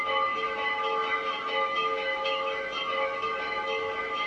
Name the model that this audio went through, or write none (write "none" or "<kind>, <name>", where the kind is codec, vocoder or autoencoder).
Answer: autoencoder, DAC-VAE